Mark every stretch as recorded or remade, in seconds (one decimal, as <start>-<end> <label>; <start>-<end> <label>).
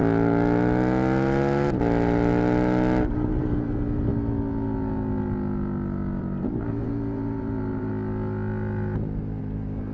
0.0-3.3 recorded; 3.3-4.1 remade; 4.1-6.2 recorded; 6.2-7.9 remade; 7.9-9.4 recorded; 9.4-9.9 remade